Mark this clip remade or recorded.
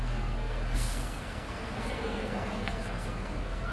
remade